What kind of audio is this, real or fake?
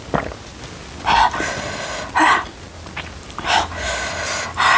real